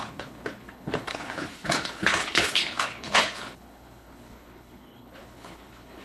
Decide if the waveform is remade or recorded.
remade